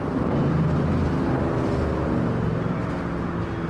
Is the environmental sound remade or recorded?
recorded